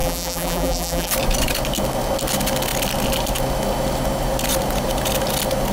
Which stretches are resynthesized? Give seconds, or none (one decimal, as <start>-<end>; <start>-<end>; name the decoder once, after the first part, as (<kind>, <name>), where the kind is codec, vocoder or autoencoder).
0.0-1.1 (vocoder, BigVGAN v2)